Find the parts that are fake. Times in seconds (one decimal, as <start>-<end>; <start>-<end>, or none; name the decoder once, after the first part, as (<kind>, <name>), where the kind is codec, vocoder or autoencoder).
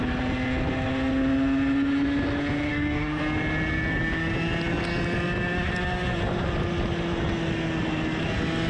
2.7-3.2 (codec, DAC)